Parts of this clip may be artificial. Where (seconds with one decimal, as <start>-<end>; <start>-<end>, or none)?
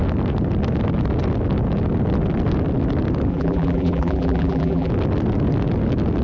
3.3-4.9